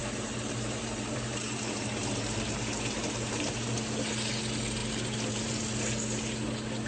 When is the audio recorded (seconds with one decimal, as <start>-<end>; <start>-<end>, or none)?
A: 3.7-4.8; 5.6-6.9